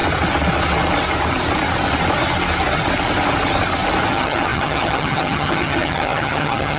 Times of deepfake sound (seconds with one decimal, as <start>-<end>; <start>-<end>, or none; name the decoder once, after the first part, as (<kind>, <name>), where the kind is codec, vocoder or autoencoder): 4.1-6.8 (vocoder, HiFi-GAN)